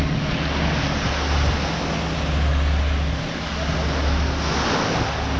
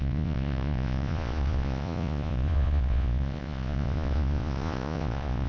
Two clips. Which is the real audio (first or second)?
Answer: first